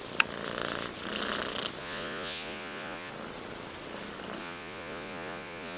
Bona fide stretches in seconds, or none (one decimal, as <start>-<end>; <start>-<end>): 0.0-1.8; 3.1-4.4